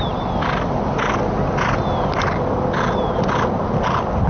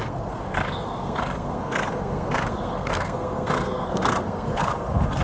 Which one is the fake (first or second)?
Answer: second